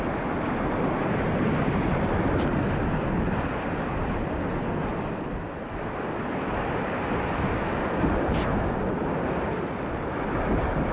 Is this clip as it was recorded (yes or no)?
yes